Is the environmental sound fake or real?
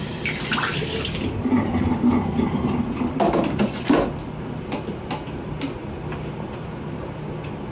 real